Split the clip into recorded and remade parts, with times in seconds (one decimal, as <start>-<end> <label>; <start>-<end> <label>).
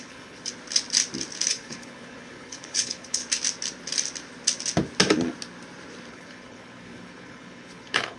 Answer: 0.0-0.5 remade; 0.5-1.5 recorded; 1.5-3.2 remade; 3.2-6.1 recorded; 6.1-8.2 remade